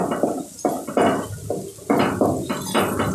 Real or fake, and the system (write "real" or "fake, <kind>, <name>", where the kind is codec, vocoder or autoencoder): real